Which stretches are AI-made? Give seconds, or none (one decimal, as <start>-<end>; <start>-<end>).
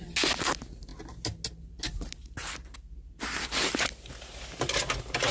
none